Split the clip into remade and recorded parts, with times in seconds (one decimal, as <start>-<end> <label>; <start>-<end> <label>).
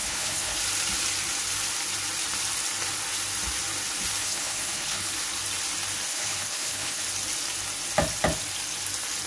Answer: 0.0-0.6 remade; 0.6-4.2 recorded; 4.2-5.1 remade; 5.1-6.1 recorded; 6.1-7.0 remade; 7.0-9.3 recorded